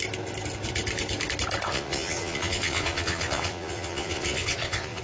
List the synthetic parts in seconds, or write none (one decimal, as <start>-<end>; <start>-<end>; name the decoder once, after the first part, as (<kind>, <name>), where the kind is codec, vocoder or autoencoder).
1.7-5.0 (vocoder, Vocos)

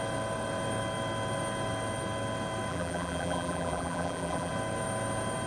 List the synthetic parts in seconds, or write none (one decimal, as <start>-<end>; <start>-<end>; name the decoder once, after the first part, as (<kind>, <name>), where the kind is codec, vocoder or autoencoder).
2.7-4.5 (vocoder, BigVGAN v2)

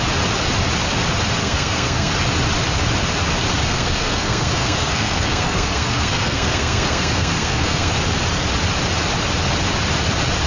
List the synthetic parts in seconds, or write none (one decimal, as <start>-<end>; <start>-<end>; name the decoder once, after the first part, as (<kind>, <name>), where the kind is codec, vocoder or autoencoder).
1.4-2.1 (codec, SNAC); 3.7-7.9

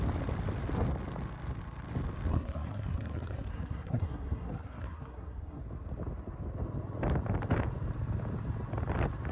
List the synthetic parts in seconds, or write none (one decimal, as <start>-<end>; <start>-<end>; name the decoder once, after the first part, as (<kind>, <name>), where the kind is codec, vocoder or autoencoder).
2.3-5.6 (codec, SNAC)

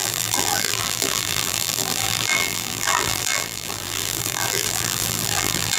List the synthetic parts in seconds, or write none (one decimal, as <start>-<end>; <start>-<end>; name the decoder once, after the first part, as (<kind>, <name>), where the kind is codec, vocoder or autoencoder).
0.0-5.8 (vocoder, BigVGAN v2)